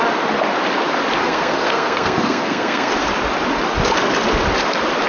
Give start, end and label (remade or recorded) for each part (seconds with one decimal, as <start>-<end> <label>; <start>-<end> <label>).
0.0-1.2 recorded; 1.2-2.9 remade; 2.9-5.1 recorded